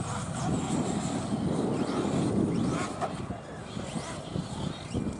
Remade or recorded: recorded